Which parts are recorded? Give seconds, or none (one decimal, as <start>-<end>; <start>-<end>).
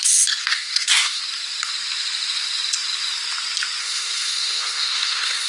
0.0-0.4; 1.2-3.8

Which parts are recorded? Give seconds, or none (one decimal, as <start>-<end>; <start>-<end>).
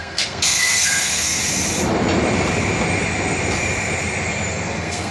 1.4-4.5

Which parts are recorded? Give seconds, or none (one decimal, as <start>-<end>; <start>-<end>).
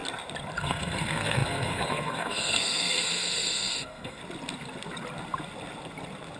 0.0-0.6; 4.2-6.4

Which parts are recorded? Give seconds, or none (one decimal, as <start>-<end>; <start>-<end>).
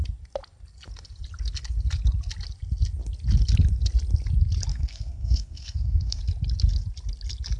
0.0-4.7; 6.2-7.6